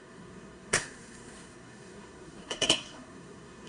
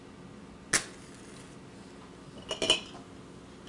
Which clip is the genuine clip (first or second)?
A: second